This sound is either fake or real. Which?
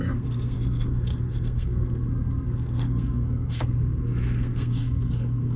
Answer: fake